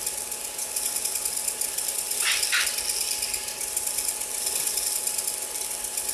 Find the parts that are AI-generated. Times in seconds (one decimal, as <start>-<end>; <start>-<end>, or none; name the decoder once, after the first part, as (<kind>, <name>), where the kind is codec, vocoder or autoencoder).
none